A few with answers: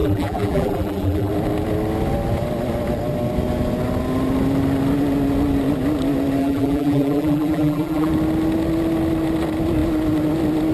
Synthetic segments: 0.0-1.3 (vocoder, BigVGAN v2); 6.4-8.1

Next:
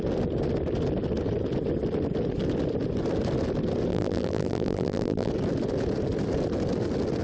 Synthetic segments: 3.9-5.3 (vocoder, BigVGAN v2)

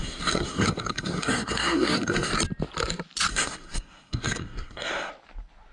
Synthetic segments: 0.0-2.3 (codec, SNAC); 3.3-5.1